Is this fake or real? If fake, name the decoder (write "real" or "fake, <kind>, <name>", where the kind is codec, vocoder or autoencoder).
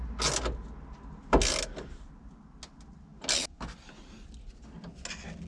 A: real